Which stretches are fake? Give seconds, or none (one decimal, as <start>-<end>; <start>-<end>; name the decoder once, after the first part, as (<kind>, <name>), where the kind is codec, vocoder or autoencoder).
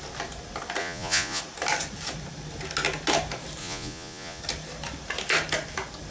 0.8-1.4 (vocoder, Vocos); 3.6-4.4